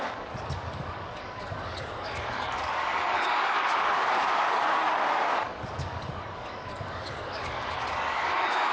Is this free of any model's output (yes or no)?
no